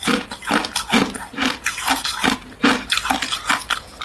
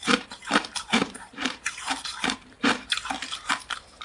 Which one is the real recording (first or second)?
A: first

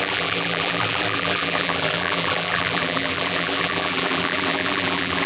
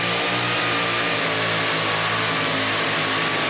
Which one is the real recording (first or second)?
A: second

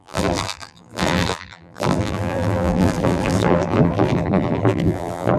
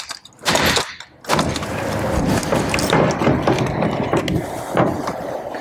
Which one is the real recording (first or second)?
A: second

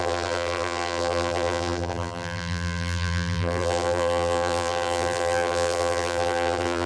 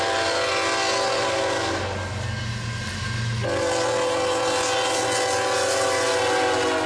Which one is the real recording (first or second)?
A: second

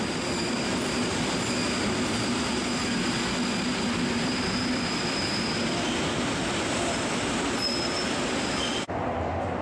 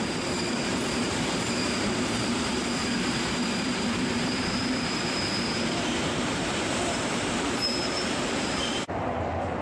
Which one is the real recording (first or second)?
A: first